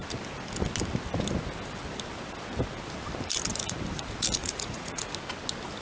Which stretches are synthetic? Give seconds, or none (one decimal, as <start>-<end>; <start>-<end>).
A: 4.4-5.1